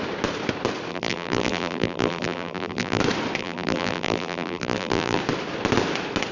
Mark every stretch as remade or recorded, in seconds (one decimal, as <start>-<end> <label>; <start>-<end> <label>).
0.0-0.9 recorded; 0.9-3.0 remade; 3.0-3.4 recorded; 3.4-5.2 remade; 5.2-6.3 recorded